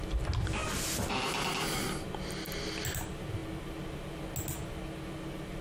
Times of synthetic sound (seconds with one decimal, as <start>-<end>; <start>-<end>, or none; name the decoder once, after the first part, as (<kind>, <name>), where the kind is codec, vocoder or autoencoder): none